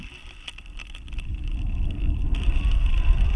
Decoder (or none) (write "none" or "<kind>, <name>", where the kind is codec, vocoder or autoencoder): vocoder, BigVGAN v2